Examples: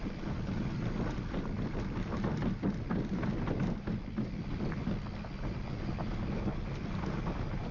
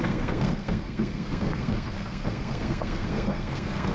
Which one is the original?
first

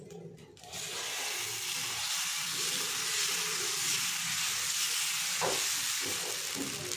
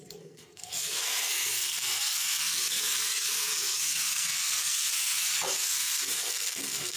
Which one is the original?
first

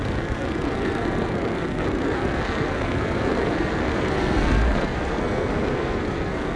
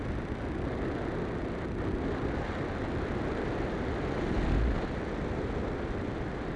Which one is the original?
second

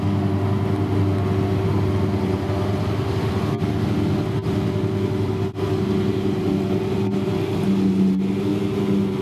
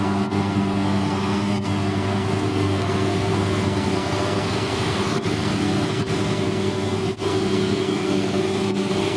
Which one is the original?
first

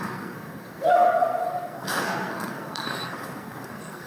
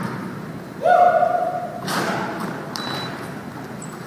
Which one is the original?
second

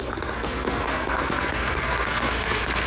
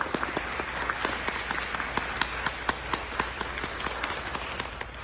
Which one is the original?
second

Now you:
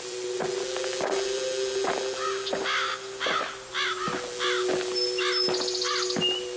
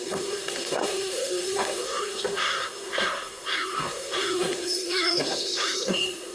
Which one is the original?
first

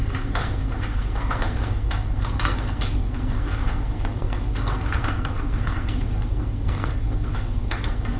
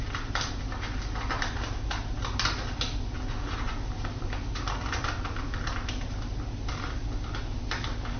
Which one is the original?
second